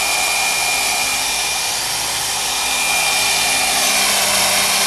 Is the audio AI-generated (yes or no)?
no